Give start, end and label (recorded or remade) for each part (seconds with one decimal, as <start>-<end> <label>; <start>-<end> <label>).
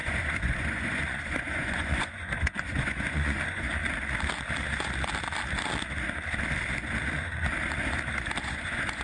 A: 0.0-3.8 remade; 3.8-8.4 recorded; 8.4-9.0 remade